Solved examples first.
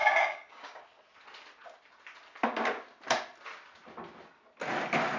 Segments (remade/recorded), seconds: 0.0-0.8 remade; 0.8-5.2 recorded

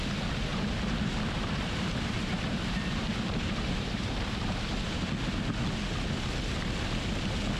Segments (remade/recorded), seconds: 0.0-0.5 recorded; 0.5-4.3 remade; 4.3-7.6 recorded

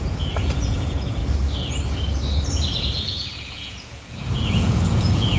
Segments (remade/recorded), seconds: 0.0-1.2 remade; 1.2-2.8 recorded; 2.8-5.4 remade